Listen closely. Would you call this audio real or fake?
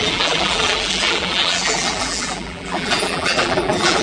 fake